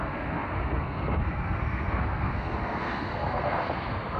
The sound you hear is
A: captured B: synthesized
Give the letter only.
B